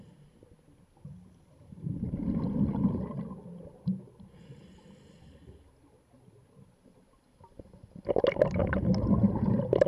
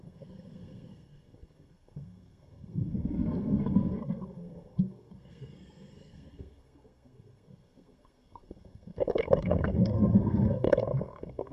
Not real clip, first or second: second